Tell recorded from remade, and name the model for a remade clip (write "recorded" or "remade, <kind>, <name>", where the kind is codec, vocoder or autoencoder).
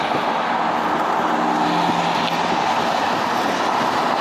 recorded